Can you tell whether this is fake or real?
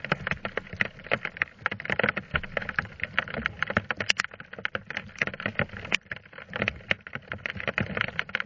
real